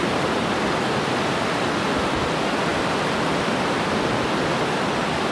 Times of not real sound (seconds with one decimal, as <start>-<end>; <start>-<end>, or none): none